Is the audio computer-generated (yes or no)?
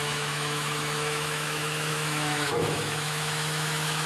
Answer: yes